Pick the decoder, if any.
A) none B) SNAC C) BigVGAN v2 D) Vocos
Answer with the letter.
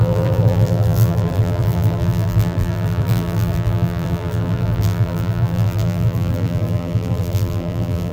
C